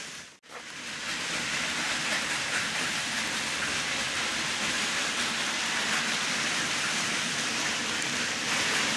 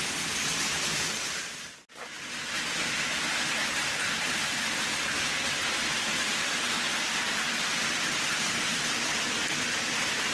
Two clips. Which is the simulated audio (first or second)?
first